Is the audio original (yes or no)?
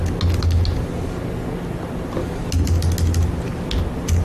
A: yes